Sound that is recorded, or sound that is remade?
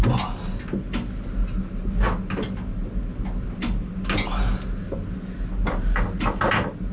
recorded